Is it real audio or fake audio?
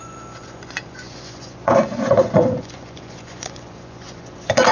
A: fake